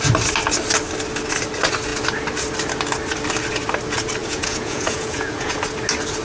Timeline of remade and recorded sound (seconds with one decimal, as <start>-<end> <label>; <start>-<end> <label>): 0.0-4.2 recorded; 4.2-5.6 remade; 5.6-6.2 recorded